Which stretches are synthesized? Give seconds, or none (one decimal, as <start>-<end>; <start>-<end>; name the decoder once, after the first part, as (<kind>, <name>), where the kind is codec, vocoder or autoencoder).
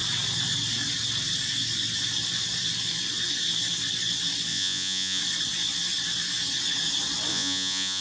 4.5-5.2 (vocoder, Vocos); 7.3-8.0